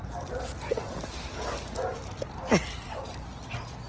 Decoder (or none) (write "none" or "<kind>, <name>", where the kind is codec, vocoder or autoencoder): none